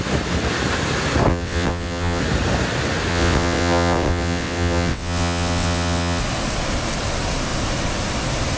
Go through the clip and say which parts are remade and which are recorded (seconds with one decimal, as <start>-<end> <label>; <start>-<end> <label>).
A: 0.0-1.3 recorded; 1.3-2.2 remade; 2.2-3.1 recorded; 3.1-6.2 remade; 6.2-8.6 recorded